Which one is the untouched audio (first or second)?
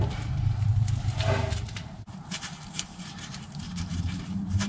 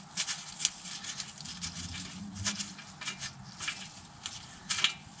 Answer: second